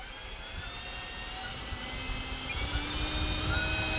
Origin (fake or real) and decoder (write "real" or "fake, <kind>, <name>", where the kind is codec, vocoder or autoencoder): real